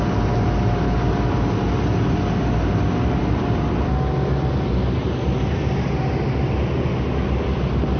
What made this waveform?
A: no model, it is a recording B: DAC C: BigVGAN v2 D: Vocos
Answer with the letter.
A